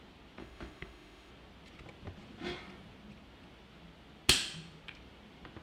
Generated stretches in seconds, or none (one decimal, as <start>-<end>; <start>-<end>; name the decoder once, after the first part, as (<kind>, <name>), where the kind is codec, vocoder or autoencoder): 0.4-1.3 (autoencoder, DAC-VAE)